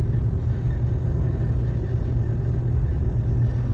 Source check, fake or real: real